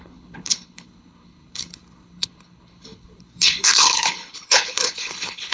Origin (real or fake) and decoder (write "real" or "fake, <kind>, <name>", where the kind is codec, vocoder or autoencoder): fake, codec, HILCodec